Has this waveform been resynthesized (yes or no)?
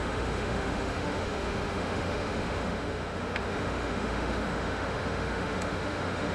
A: yes